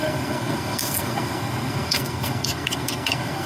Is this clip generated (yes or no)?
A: yes